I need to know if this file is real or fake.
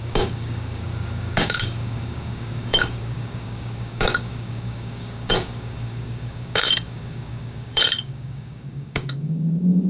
fake